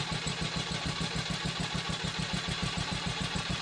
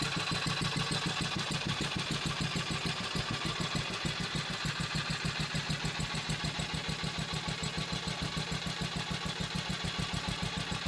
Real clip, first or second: second